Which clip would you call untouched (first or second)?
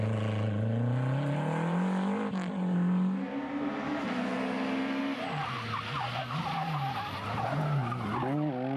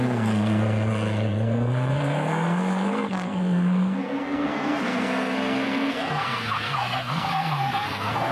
first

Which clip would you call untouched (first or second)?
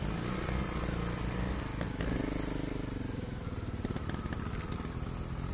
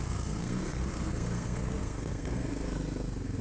first